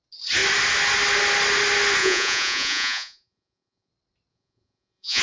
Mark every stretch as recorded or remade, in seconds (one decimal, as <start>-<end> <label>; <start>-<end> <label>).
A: 0.0-2.0 recorded; 2.0-3.9 remade; 3.9-4.3 recorded; 4.3-5.2 remade